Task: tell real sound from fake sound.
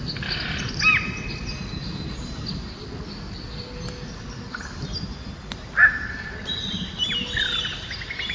real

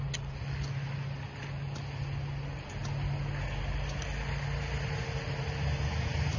real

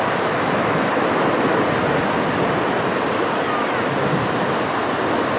real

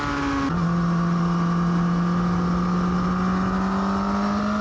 real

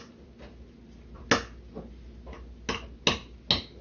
real